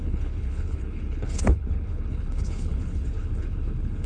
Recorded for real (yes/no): no